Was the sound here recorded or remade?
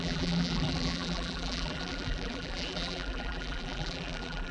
remade